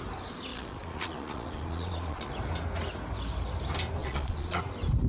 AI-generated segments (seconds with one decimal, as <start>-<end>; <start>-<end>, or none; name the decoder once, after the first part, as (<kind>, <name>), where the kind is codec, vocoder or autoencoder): 0.5-2.3 (vocoder, Vocos); 4.0-4.6